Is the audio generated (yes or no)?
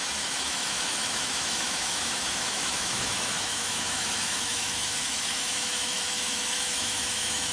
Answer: yes